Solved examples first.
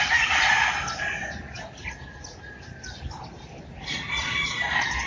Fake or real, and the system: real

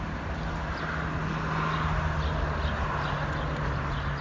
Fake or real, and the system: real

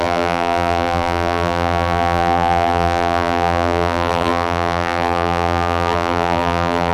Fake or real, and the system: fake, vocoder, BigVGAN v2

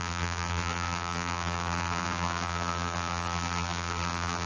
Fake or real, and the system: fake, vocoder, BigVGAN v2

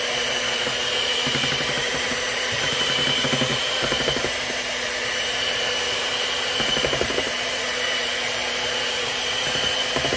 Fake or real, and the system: fake, vocoder, BigVGAN v2